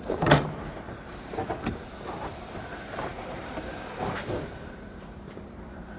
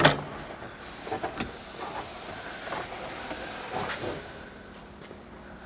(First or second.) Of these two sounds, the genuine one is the second